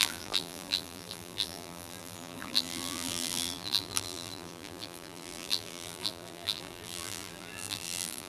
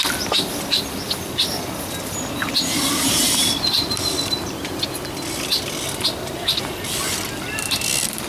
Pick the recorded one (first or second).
second